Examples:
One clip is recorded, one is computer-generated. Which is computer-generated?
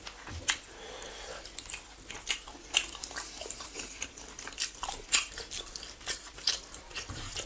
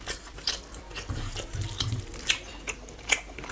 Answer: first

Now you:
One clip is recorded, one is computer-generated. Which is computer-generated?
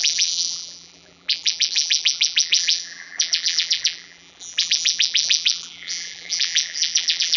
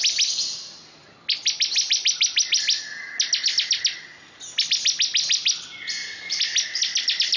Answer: first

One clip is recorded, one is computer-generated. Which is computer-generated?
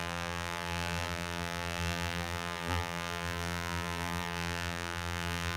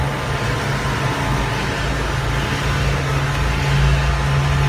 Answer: first